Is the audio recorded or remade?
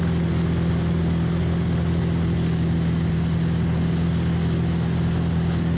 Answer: recorded